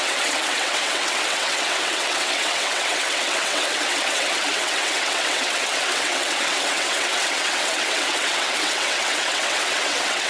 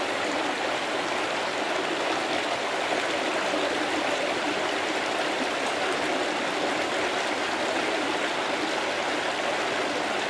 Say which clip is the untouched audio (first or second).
second